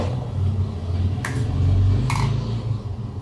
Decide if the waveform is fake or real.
real